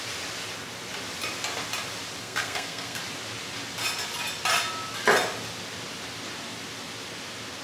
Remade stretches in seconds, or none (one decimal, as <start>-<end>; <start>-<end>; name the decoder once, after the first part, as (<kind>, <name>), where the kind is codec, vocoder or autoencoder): 2.2-3.0 (codec, SNAC)